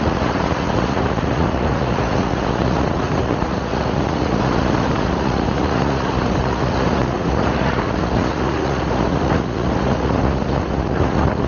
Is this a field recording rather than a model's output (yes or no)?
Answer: no